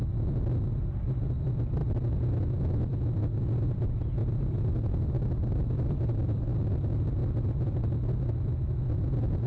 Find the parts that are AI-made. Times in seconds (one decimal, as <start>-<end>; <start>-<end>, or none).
4.2-5.2